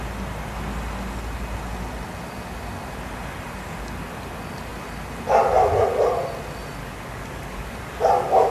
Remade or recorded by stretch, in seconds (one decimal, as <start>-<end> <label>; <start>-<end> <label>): 0.0-6.8 recorded; 6.8-8.5 remade